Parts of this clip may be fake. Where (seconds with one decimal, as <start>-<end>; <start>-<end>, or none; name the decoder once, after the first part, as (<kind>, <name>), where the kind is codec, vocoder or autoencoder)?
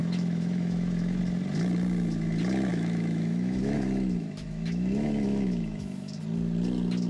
0.0-1.2 (autoencoder, DAC-VAE); 2.7-6.2